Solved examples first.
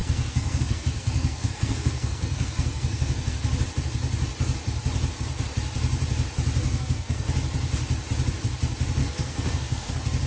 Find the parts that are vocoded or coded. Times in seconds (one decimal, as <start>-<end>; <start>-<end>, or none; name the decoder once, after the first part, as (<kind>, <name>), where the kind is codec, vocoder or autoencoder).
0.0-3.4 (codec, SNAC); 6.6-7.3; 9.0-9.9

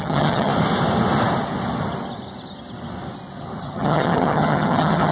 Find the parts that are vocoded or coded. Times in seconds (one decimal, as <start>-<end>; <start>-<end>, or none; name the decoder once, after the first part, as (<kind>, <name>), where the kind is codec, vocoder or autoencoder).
0.0-0.5 (vocoder, HiFi-GAN); 3.6-5.1

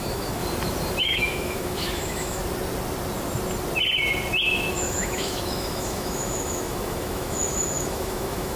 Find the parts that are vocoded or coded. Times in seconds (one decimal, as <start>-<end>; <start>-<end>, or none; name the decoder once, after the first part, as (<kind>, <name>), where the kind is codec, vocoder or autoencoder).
0.0-0.4 (autoencoder, DAC-VAE); 1.0-2.4; 4.7-8.6

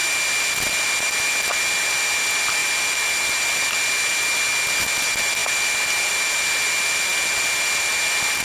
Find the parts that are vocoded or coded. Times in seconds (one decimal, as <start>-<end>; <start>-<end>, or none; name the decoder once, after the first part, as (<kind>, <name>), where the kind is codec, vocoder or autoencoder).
none